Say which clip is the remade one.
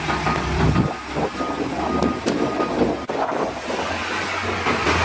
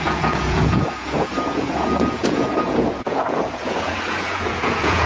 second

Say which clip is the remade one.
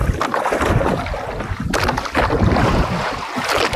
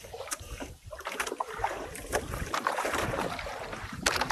second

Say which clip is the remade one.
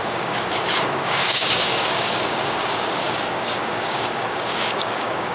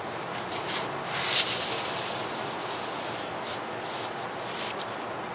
first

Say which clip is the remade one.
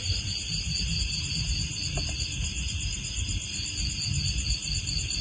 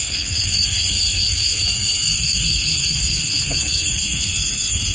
second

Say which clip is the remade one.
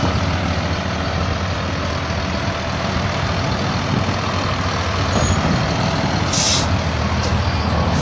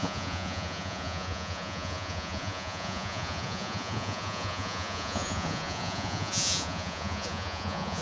second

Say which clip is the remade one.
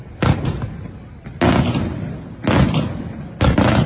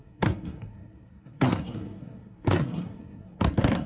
second